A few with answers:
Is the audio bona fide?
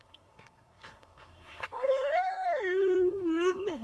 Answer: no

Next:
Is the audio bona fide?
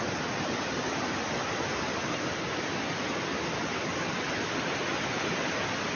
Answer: yes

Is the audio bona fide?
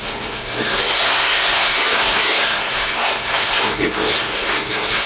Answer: no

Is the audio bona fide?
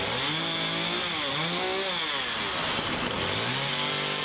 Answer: yes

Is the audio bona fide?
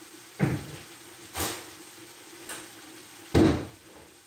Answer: no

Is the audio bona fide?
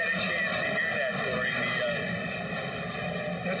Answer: yes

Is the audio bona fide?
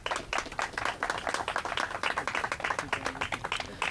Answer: yes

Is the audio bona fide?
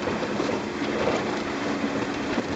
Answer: no